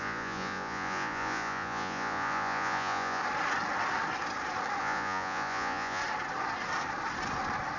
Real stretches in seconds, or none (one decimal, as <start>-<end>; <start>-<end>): 3.2-4.8; 6.0-7.8